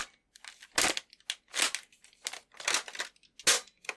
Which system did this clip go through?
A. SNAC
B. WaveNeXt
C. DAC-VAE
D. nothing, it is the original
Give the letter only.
D